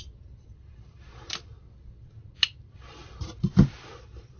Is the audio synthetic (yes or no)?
no